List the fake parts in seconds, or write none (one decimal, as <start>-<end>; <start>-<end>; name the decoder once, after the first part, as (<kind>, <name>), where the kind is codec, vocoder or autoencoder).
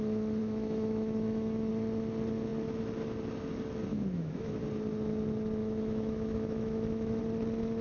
0.4-1.7 (autoencoder, DAC-VAE); 3.9-4.6; 5.6-7.2